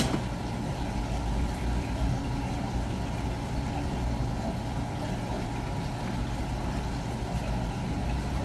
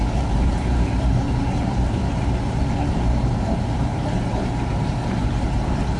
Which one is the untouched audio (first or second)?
first